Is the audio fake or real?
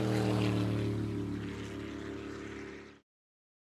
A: real